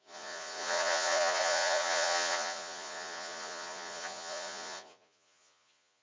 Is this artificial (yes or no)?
yes